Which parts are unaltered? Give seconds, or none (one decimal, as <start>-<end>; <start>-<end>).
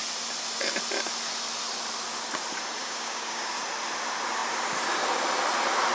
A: 0.0-2.8; 3.6-5.9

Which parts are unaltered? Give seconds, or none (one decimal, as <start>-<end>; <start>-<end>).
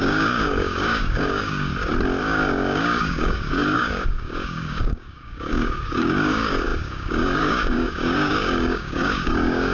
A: 1.7-2.2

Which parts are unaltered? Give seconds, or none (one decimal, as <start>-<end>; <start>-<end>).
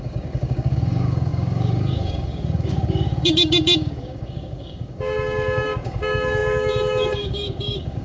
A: none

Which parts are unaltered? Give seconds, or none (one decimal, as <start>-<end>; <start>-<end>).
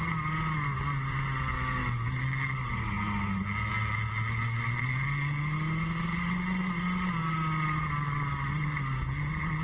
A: 0.0-9.6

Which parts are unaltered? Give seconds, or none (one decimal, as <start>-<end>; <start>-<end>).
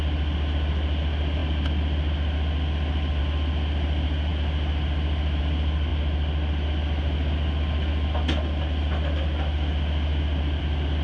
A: 0.0-11.0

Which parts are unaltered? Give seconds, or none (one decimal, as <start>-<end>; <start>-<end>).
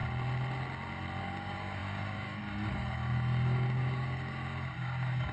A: 0.0-1.2